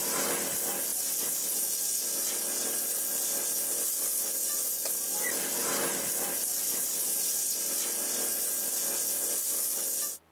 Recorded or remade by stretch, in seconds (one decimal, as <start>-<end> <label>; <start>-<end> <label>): 0.0-0.5 remade; 0.5-5.6 recorded; 5.6-8.5 remade; 8.5-10.3 recorded